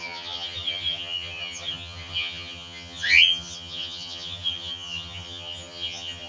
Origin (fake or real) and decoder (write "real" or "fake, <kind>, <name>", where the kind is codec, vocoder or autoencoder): fake, vocoder, HiFi-GAN